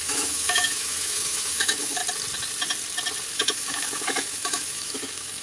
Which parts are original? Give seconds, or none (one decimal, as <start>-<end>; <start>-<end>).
2.0-3.3